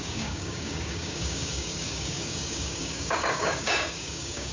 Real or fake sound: fake